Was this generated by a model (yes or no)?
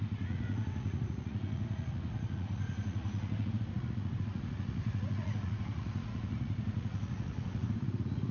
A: yes